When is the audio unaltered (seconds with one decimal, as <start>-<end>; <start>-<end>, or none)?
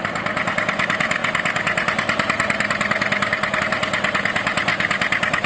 0.0-4.7